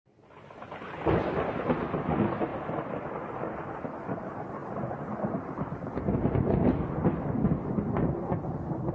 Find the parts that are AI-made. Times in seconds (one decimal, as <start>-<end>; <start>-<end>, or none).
none